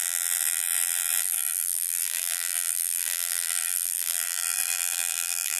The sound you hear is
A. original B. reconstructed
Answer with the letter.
B